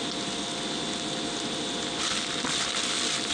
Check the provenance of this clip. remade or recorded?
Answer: recorded